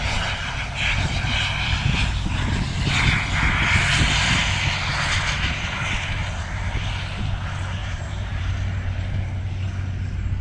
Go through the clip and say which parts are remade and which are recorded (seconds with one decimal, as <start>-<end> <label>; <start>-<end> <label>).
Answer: 0.0-6.2 recorded; 6.2-6.9 remade; 6.9-7.8 recorded; 7.8-8.5 remade; 8.5-10.4 recorded

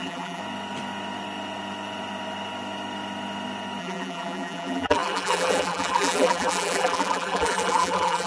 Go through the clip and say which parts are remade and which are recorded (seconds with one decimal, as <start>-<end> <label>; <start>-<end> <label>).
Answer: 0.0-0.4 remade; 0.4-3.8 recorded; 3.8-8.3 remade

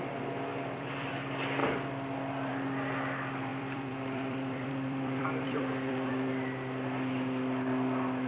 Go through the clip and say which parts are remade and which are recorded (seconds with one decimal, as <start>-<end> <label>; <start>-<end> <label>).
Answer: 0.0-0.5 recorded; 0.5-1.1 remade; 1.1-3.5 recorded; 3.5-6.1 remade; 6.1-8.3 recorded

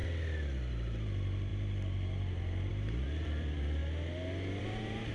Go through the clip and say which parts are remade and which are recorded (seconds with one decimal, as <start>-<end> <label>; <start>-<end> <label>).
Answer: 0.0-0.7 recorded; 0.7-3.8 remade; 3.8-4.6 recorded; 4.6-5.1 remade

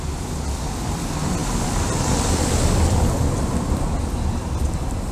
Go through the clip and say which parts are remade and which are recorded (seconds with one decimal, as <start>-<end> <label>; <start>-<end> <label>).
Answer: 0.0-5.1 recorded

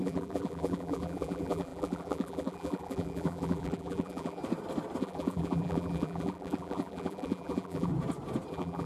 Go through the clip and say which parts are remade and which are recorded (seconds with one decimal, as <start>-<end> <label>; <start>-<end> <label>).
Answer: 0.0-4.4 remade; 4.4-5.0 recorded; 5.0-7.9 remade; 7.9-8.5 recorded; 8.5-8.9 remade

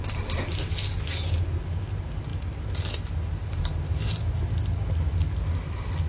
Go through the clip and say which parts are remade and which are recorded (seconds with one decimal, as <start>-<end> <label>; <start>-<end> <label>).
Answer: 0.0-6.1 recorded

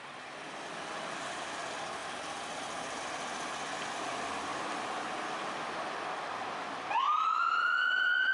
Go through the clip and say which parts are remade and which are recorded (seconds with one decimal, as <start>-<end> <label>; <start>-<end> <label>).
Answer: 0.0-2.0 recorded; 2.0-3.0 remade; 3.0-8.3 recorded